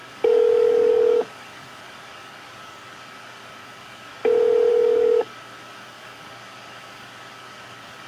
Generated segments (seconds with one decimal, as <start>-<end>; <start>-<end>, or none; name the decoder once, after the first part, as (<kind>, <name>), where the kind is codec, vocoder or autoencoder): 0.0-4.2 (codec, DAC); 4.7-8.1